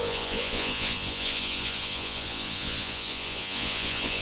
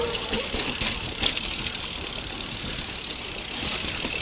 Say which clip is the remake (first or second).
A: first